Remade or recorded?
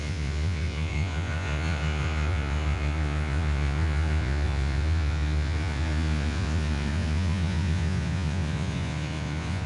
remade